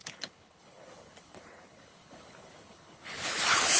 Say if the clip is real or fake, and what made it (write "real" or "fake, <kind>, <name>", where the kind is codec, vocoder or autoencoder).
fake, codec, HILCodec